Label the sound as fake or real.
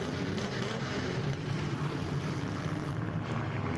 fake